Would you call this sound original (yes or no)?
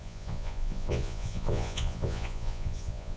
no